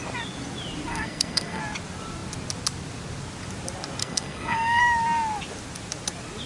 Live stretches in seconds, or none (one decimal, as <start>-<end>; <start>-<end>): 0.0-0.9; 1.6-4.0; 4.8-6.5